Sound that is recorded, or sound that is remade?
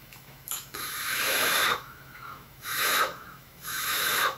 remade